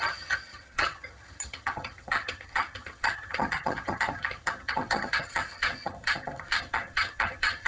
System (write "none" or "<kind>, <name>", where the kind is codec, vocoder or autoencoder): vocoder, HiFi-GAN